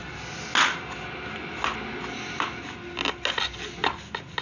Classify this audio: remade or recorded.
recorded